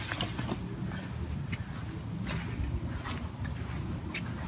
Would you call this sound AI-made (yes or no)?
no